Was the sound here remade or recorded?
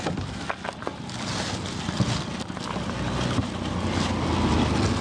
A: recorded